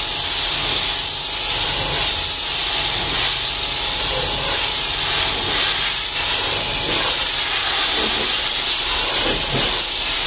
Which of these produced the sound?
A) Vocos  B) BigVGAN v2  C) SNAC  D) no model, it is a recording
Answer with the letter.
D